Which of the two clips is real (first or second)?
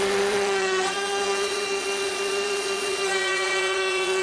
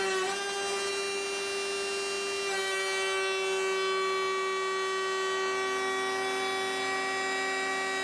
second